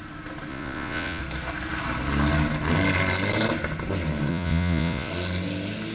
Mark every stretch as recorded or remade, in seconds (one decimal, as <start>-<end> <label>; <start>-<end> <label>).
0.0-0.5 recorded; 0.5-1.2 remade; 1.2-4.3 recorded; 4.3-5.1 remade; 5.1-5.9 recorded